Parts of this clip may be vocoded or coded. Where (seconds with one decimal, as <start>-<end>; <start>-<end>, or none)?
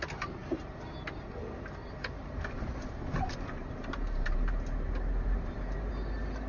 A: 2.2-5.9